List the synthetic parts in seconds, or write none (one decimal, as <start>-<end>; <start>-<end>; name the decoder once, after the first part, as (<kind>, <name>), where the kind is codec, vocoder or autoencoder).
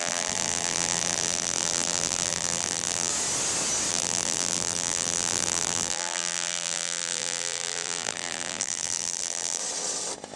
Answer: 0.0-3.1 (vocoder, BigVGAN v2); 3.9-9.6